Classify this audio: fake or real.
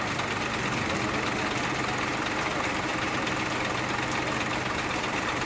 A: real